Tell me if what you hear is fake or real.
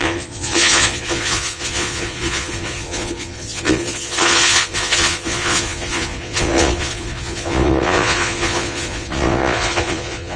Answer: fake